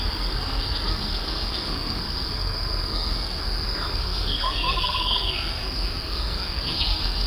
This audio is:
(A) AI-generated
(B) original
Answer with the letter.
A